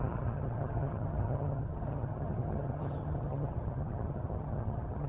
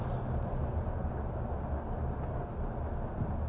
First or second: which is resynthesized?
first